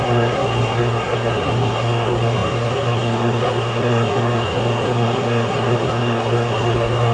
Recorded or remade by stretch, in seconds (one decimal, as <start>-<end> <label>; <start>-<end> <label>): 0.0-7.1 remade